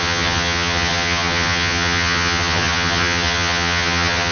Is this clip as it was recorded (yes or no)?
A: no